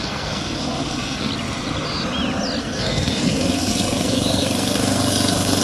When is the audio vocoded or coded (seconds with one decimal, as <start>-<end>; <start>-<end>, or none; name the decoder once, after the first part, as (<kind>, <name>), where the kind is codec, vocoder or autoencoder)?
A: 0.0-1.3 (codec, SNAC); 2.6-5.6